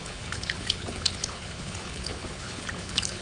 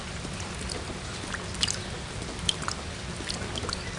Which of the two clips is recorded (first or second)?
second